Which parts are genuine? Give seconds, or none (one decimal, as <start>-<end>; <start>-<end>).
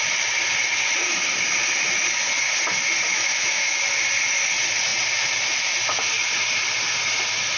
0.0-3.1; 3.8-7.6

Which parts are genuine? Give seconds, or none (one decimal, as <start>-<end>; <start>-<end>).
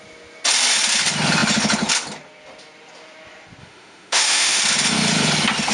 0.0-3.6; 4.6-5.7